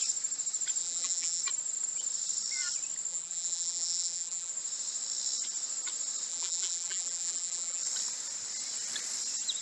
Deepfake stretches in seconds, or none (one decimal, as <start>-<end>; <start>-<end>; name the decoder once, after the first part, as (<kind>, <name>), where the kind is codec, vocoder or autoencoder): 0.8-1.4 (vocoder, BigVGAN v2); 3.1-4.5; 6.3-7.8